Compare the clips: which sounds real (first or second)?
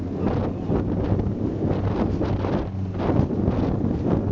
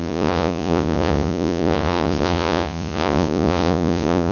first